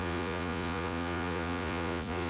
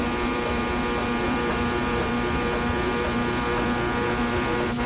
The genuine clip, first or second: second